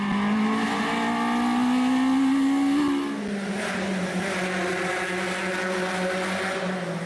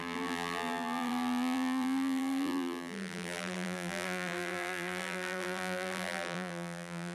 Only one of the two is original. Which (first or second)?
first